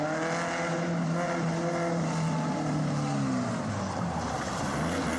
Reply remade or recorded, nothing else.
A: recorded